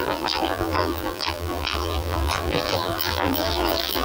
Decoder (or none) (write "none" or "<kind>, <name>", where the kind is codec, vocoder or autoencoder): vocoder, BigVGAN v2